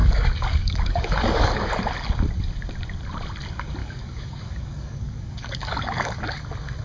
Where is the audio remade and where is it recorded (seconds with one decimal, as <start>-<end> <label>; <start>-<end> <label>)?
0.0-1.7 remade; 1.7-3.8 recorded; 3.8-6.2 remade; 6.2-6.8 recorded